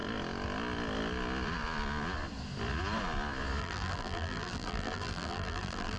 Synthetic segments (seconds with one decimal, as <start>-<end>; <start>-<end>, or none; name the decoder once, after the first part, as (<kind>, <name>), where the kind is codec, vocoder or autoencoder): 3.6-6.0 (vocoder, BigVGAN v2)